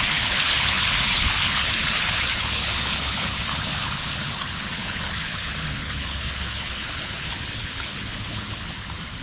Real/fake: fake